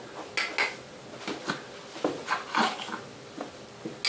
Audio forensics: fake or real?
real